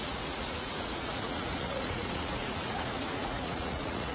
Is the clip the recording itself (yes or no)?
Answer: no